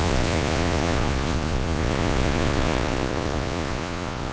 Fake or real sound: fake